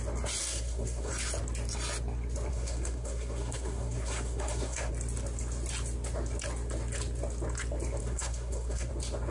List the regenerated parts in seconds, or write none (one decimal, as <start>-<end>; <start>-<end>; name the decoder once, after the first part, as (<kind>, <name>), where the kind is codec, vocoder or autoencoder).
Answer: 0.4-1.1 (codec, SNAC); 2.5-4.9; 8.0-8.9